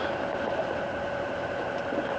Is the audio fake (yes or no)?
no